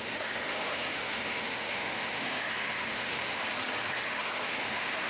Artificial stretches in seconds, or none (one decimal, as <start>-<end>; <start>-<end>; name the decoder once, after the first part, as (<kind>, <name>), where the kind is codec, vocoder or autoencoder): 0.0-3.4 (autoencoder, DAC-VAE); 3.9-5.1